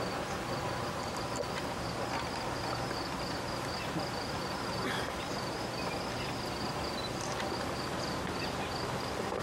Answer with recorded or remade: recorded